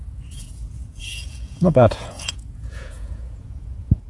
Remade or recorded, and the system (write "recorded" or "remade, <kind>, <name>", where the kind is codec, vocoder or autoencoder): remade, vocoder, Vocos